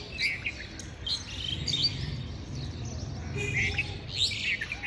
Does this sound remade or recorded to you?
recorded